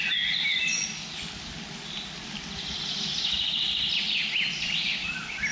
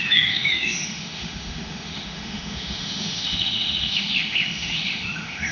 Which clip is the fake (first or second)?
second